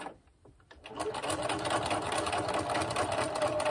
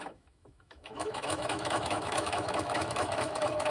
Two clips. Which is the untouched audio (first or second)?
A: first